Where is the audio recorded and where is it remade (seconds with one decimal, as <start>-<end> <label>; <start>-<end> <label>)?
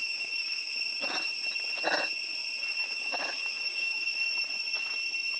0.0-0.8 remade; 0.8-2.8 recorded; 2.8-4.1 remade; 4.1-5.4 recorded